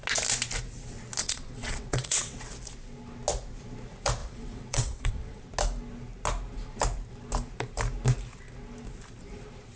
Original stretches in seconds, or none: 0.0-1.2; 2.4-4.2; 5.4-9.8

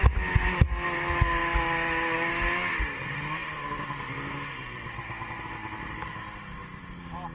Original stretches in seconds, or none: 0.0-7.3

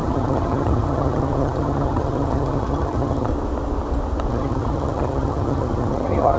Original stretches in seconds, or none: 3.3-4.3

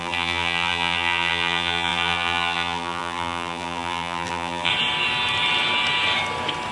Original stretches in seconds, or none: 4.7-6.7

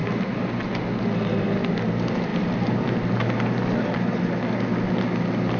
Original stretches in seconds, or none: 0.0-5.6